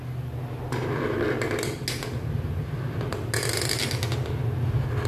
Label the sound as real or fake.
real